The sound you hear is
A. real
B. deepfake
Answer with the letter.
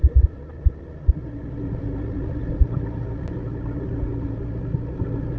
A